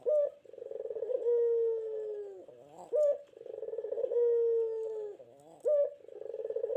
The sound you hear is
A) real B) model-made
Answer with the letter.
A